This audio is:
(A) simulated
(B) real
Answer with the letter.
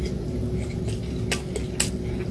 B